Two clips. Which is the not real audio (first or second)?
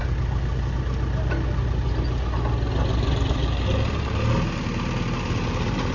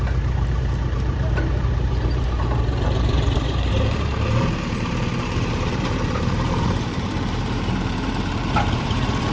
second